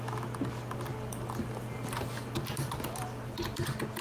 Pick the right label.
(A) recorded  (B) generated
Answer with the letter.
A